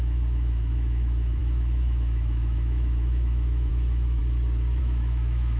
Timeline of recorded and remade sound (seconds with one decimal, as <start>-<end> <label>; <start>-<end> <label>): 0.0-4.2 remade; 4.2-4.8 recorded; 4.8-5.6 remade